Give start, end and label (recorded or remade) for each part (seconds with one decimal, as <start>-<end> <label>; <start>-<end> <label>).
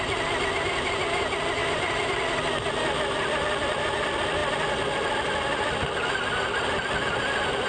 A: 0.0-1.6 recorded; 1.6-2.2 remade; 2.2-7.7 recorded